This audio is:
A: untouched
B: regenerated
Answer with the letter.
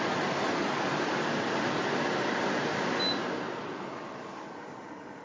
A